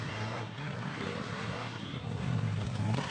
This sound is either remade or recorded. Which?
remade